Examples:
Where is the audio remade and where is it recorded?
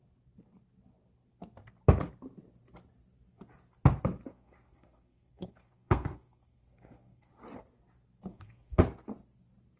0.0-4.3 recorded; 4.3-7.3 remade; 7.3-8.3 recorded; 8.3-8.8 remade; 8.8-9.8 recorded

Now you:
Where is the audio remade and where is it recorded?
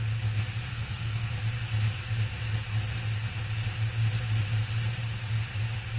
0.0-0.7 recorded; 0.7-1.3 remade; 1.3-6.0 recorded